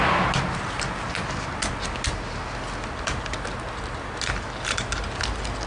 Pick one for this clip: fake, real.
real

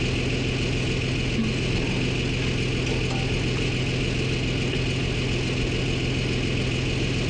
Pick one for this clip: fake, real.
real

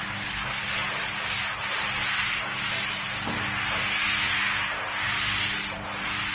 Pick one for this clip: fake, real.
real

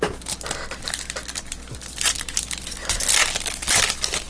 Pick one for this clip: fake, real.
real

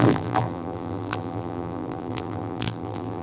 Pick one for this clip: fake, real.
fake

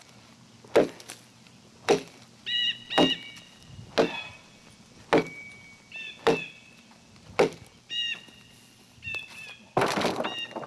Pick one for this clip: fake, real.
real